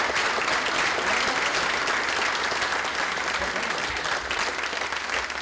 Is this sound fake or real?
real